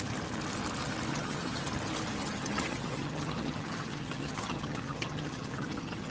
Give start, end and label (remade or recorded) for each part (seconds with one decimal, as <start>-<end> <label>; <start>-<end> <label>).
0.0-1.1 recorded; 1.1-1.7 remade; 1.7-2.2 recorded; 2.2-6.1 remade